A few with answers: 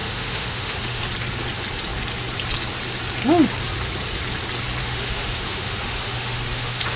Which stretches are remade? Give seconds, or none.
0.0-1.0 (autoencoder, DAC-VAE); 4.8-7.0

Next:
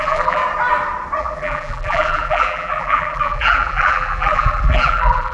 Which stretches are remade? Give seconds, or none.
0.0-0.4 (vocoder, BigVGAN v2); 1.2-5.3

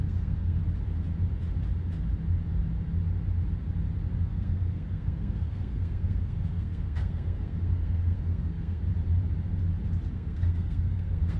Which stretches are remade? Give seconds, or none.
0.0-0.6 (codec, SNAC); 4.1-8.8; 10.1-11.4

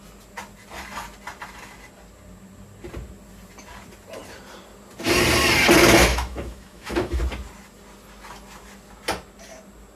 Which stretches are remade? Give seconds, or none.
6.1-7.2 (autoencoder, DAC-VAE)

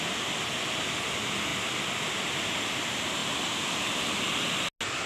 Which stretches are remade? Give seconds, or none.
none

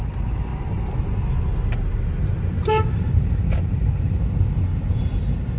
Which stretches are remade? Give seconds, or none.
none

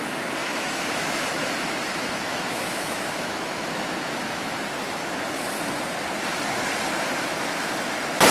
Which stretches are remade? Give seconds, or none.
0.4-4.5 (autoencoder, DAC-VAE)

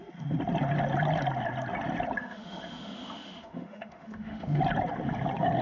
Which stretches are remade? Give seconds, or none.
2.2-4.6 (autoencoder, DAC-VAE)